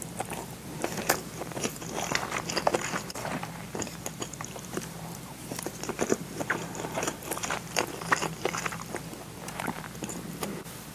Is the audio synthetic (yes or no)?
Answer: yes